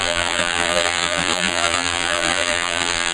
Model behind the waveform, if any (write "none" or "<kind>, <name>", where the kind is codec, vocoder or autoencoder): vocoder, BigVGAN v2